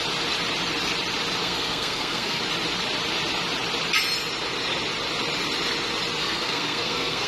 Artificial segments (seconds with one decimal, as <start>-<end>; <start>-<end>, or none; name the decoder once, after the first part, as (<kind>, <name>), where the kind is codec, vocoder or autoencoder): 1.4-2.4 (codec, SNAC); 6.2-7.3